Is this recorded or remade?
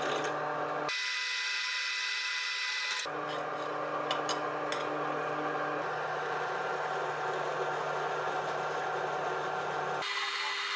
recorded